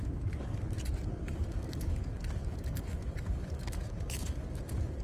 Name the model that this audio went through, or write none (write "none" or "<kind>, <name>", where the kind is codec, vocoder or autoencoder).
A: codec, DAC